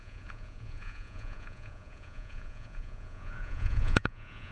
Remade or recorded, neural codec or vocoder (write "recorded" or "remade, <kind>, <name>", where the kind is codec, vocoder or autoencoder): remade, vocoder, Vocos